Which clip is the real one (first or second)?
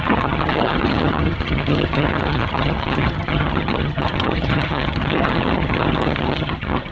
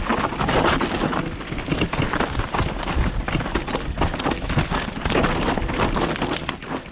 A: second